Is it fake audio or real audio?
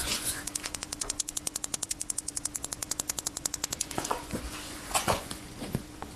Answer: fake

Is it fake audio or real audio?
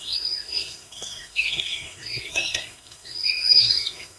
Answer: fake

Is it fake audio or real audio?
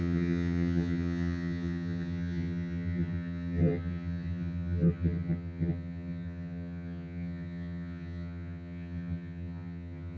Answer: fake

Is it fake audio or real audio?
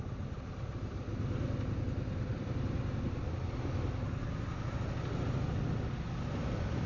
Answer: real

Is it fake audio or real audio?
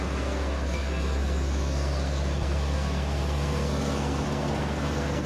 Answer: fake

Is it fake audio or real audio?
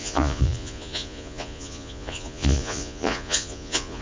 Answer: fake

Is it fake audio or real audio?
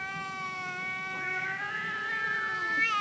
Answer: real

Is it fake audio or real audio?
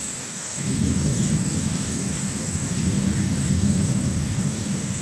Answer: fake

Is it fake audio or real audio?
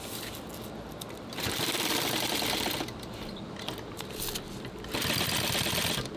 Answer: real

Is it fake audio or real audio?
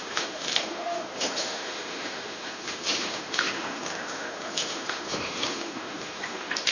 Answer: fake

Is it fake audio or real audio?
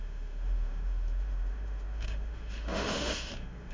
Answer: fake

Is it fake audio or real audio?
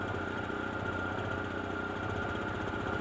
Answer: real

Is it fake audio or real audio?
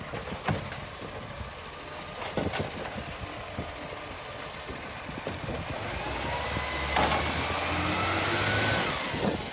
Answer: real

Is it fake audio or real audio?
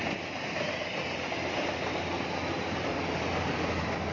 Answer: real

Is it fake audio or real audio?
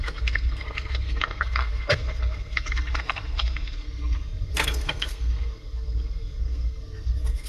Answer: fake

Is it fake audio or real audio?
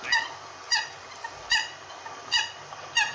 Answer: real